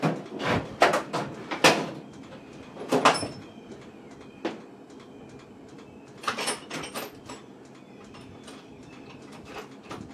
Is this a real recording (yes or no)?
yes